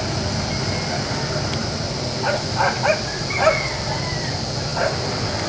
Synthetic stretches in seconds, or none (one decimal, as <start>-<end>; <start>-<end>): none